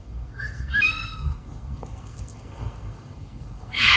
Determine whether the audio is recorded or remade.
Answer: remade